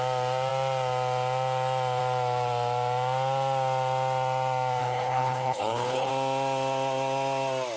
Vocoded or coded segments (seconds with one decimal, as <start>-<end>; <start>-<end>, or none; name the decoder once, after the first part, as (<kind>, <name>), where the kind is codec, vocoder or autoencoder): 4.8-6.1 (codec, HILCodec)